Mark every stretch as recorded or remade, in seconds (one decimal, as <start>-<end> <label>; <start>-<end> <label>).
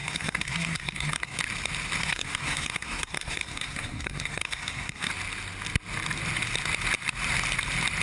0.0-1.4 remade; 1.4-2.0 recorded; 2.0-5.1 remade; 5.1-8.0 recorded